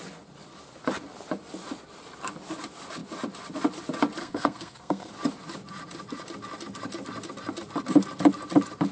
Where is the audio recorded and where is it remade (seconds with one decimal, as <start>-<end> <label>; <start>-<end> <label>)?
0.0-4.2 recorded; 4.2-5.1 remade; 5.1-8.9 recorded